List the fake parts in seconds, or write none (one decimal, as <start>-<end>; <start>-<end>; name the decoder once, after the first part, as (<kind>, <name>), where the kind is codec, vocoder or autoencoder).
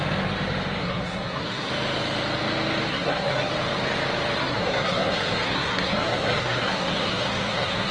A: 0.8-1.7 (codec, SNAC); 2.9-3.5; 4.4-7.9